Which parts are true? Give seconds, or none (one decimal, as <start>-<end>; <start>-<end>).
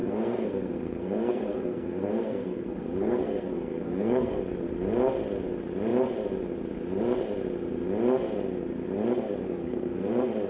4.4-9.6; 10.1-10.5